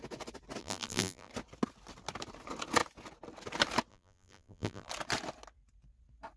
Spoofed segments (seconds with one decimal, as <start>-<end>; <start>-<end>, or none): 0.6-1.3; 3.9-4.9